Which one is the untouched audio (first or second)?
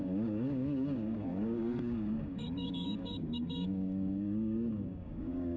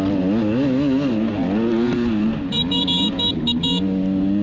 second